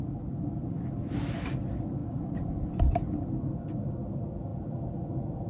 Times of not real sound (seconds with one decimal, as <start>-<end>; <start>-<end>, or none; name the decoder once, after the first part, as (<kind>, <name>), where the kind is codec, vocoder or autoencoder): none